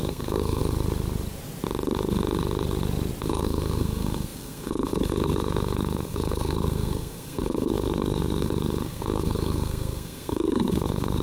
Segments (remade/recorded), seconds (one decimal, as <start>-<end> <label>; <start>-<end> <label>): 0.0-0.6 remade; 0.6-3.2 recorded; 3.2-11.2 remade